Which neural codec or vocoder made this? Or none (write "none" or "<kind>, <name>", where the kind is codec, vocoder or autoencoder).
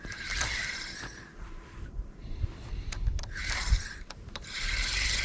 vocoder, BigVGAN v2